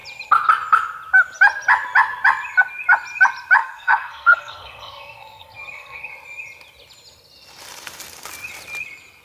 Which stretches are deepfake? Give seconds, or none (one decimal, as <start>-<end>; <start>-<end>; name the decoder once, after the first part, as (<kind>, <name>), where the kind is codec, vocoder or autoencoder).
3.6-6.1 (codec, SNAC)